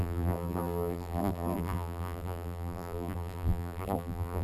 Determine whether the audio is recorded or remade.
remade